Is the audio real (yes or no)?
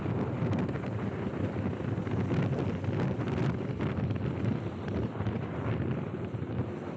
yes